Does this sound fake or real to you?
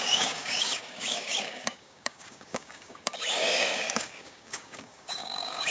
fake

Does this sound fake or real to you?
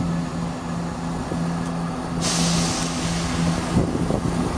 real